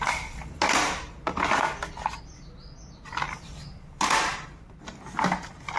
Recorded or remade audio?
recorded